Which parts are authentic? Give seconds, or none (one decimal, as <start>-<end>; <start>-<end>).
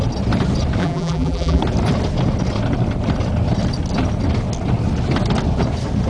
0.0-0.8; 1.6-6.1